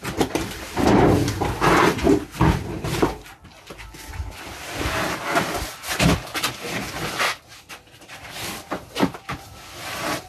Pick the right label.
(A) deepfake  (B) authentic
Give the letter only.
B